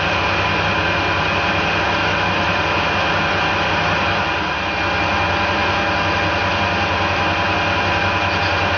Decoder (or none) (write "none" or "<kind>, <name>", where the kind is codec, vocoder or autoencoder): none